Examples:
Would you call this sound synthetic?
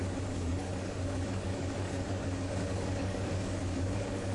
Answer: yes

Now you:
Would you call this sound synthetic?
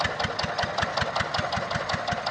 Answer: no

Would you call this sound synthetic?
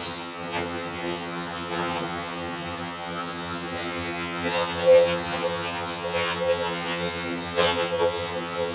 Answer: yes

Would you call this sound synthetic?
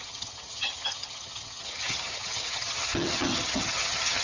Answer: yes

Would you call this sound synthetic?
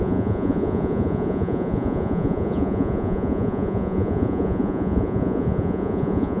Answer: yes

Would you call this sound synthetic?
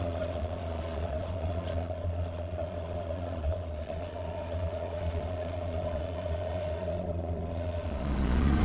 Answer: yes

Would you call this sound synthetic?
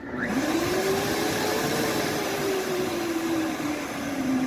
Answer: yes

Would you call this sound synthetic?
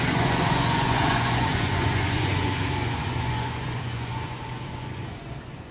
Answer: yes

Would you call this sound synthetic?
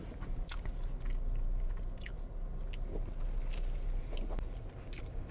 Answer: no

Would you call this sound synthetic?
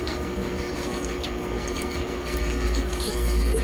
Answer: yes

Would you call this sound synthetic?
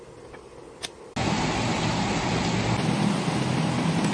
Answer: no